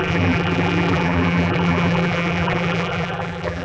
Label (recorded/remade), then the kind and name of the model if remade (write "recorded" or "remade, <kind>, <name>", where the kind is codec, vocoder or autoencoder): remade, vocoder, BigVGAN v2